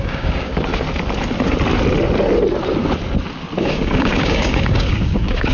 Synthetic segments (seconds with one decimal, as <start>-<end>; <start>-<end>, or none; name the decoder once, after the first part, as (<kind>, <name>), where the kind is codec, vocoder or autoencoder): 0.0-0.5 (codec, DAC); 3.6-5.5